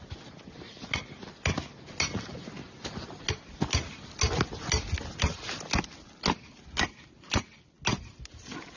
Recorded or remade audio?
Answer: recorded